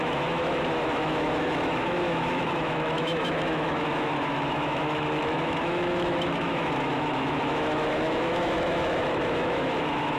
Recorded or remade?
remade